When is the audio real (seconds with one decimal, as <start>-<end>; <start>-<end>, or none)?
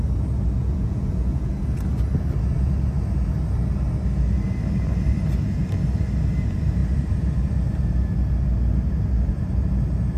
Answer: 0.0-0.6; 1.5-10.2